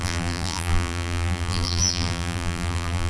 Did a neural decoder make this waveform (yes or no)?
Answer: yes